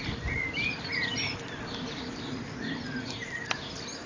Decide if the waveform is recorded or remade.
recorded